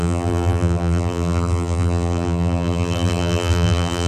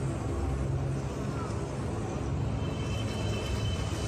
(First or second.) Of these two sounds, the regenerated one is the first